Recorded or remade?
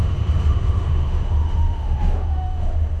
remade